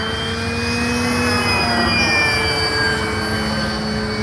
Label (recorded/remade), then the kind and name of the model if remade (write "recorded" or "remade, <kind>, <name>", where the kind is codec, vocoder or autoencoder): recorded